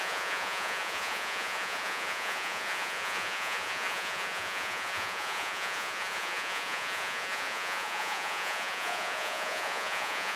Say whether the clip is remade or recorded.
remade